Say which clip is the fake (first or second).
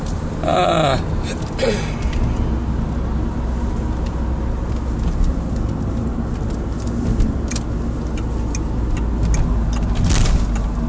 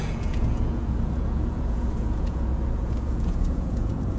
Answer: second